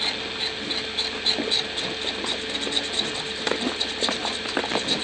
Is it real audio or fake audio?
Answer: real